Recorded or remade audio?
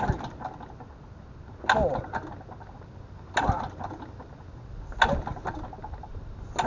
recorded